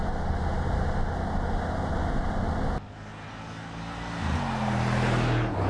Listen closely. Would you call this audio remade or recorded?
recorded